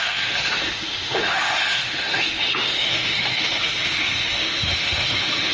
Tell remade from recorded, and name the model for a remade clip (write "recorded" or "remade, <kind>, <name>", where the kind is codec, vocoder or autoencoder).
remade, autoencoder, DAC-VAE